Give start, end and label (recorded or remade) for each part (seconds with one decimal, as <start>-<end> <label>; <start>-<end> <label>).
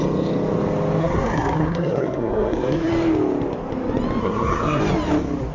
0.0-1.0 recorded; 1.0-2.9 remade; 2.9-4.2 recorded; 4.2-4.8 remade; 4.8-5.5 recorded